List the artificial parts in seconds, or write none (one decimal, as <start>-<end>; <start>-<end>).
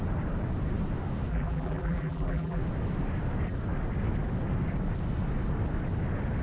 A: 1.3-2.6